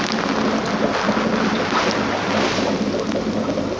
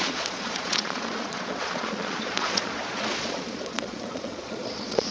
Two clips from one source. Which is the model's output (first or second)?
second